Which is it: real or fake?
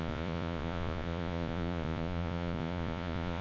fake